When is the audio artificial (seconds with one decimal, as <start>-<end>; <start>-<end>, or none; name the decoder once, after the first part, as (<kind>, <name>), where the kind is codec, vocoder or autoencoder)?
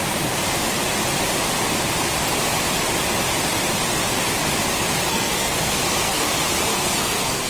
5.1-6.3 (codec, SNAC); 6.7-7.5